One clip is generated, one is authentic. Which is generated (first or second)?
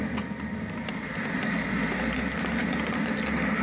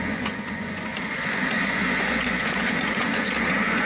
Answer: second